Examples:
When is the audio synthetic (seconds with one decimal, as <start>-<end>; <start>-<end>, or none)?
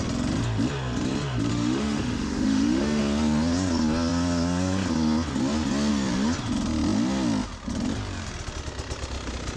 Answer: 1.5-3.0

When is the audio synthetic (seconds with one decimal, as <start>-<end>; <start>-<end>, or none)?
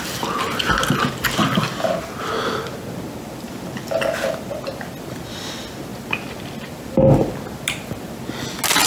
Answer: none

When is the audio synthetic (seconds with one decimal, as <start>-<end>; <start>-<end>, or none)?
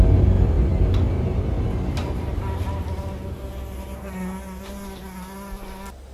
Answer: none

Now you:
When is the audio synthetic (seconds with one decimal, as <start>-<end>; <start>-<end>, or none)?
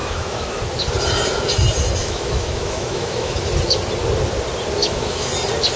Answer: 0.0-0.6; 2.0-3.4; 4.8-5.3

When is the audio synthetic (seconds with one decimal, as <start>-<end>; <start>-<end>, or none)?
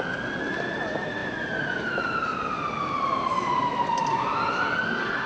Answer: none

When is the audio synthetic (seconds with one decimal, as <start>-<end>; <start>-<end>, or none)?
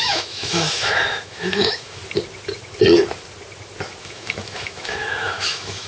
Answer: 0.0-2.0; 4.0-5.9